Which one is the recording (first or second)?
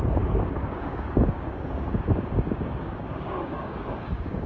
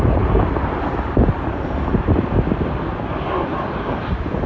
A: second